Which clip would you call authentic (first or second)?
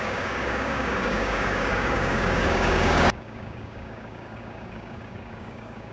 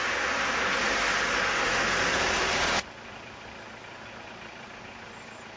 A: second